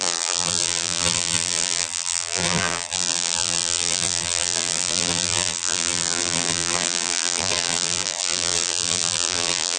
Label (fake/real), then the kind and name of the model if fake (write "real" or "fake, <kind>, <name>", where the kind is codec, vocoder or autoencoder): fake, vocoder, BigVGAN v2